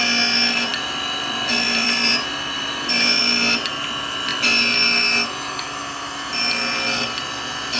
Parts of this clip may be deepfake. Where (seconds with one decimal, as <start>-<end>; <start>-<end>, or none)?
0.7-3.2

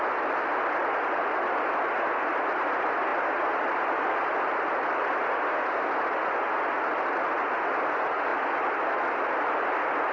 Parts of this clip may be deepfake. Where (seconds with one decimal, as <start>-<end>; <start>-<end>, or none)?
0.8-1.5; 8.3-9.1

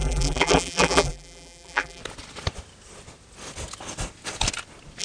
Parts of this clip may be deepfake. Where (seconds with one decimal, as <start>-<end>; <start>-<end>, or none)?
0.0-2.0

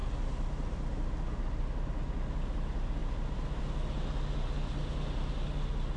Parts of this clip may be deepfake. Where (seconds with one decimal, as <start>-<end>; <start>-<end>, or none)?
none

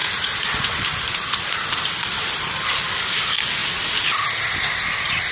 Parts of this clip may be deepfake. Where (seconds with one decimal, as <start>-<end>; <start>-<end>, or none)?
0.0-2.7

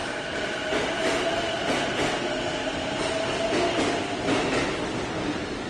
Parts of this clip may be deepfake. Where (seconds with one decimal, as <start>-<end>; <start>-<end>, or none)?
none